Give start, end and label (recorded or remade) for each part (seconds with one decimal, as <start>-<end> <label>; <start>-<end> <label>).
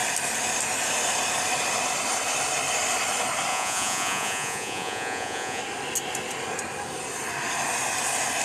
0.0-3.5 recorded; 3.5-5.6 remade; 5.6-8.4 recorded